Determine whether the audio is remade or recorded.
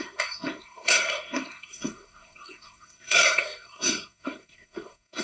remade